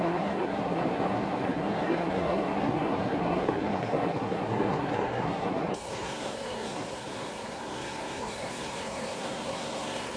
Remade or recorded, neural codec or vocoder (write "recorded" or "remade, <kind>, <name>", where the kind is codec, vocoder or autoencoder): remade, codec, SNAC